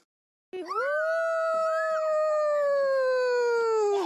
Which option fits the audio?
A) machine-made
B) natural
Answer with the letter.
B